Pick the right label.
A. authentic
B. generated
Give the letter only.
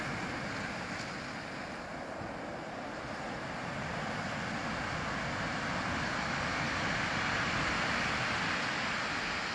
A